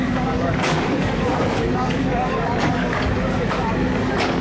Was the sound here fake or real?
fake